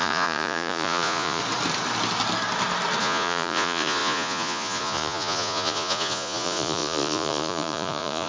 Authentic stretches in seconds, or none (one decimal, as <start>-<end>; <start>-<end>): 1.4-3.0